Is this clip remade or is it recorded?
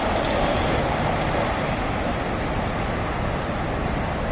recorded